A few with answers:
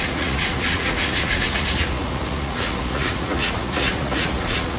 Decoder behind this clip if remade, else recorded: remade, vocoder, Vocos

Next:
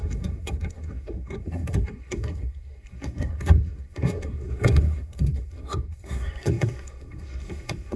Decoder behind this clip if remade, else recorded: remade, codec, SNAC